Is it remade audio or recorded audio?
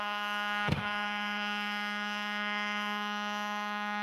remade